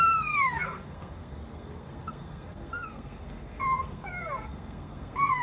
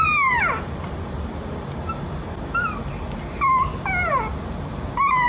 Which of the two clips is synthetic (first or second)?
first